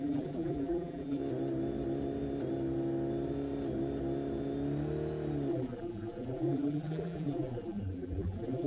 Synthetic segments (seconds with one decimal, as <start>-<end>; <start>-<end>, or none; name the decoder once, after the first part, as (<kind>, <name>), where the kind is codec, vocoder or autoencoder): 0.0-1.2 (vocoder, BigVGAN v2); 5.5-8.7